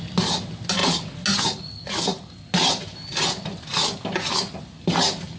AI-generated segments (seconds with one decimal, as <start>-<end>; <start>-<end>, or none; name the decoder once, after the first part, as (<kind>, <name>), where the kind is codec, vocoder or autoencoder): none